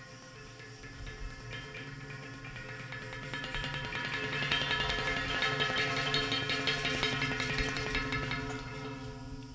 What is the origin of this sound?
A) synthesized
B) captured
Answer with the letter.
B